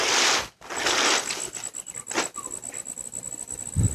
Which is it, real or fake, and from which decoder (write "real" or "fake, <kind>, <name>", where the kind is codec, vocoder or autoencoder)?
real